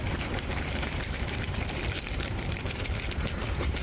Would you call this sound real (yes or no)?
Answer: no